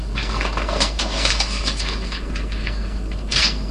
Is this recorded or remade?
remade